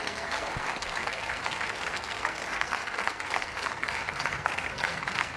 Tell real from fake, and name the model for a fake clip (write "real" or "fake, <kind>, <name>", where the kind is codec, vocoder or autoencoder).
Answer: fake, codec, SNAC